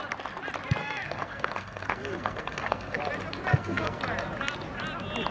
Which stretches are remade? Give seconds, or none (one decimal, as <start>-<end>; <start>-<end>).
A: 0.8-3.0; 3.5-4.0